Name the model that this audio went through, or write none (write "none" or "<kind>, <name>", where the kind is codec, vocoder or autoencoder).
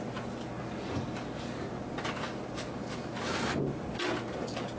none